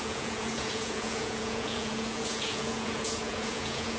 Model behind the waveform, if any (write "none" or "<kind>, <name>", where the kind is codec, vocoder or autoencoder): vocoder, Vocos